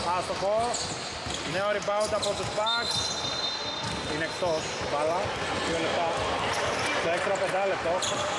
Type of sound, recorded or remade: recorded